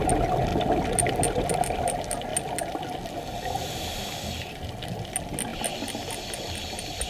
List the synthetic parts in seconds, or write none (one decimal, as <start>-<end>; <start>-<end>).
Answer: none